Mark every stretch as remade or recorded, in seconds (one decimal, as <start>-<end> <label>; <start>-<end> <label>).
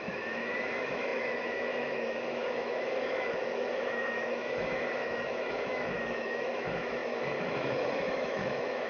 0.0-8.9 remade